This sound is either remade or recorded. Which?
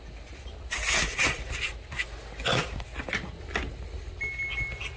recorded